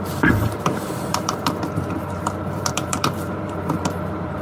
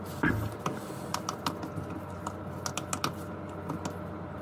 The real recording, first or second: second